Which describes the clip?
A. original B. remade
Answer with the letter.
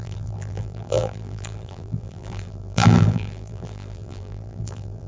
B